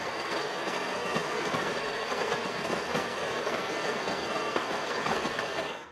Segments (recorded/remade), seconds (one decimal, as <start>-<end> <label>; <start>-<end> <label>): 0.0-5.9 remade